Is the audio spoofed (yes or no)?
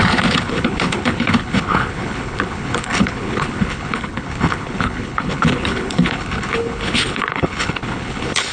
yes